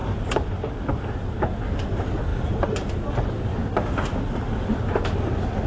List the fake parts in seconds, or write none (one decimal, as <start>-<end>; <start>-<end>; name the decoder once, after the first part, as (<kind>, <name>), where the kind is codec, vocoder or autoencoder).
0.0-1.4 (vocoder, BigVGAN v2)